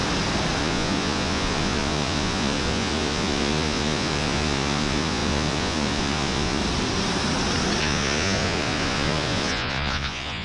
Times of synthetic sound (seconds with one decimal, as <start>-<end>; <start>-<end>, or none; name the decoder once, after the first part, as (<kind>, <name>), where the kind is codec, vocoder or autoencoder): 0.6-6.6 (vocoder, Vocos); 7.8-10.4